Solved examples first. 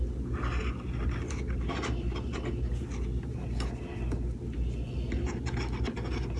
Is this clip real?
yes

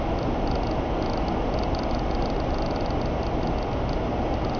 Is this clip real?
yes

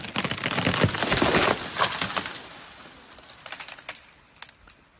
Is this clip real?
yes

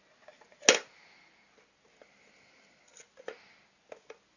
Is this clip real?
yes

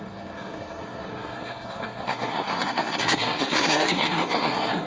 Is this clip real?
no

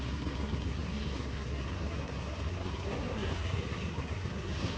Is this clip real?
no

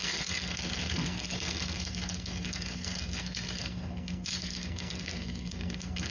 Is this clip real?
no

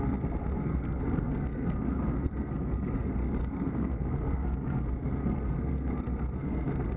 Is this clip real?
no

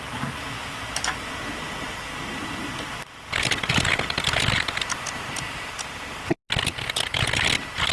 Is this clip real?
yes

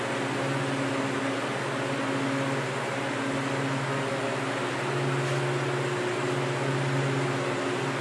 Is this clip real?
yes